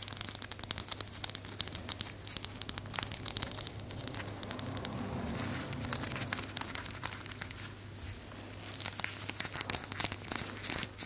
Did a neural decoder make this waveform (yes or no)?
no